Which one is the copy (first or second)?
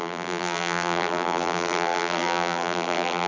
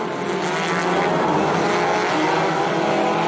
first